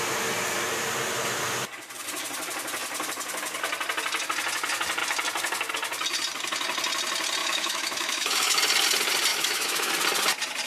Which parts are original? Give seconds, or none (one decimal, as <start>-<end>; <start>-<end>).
0.0-7.4; 8.6-9.3; 9.9-10.7